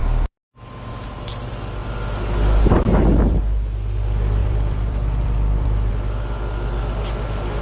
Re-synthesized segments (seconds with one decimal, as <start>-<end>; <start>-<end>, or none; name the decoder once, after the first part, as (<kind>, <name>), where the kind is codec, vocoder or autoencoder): 4.4-5.9 (vocoder, BigVGAN v2)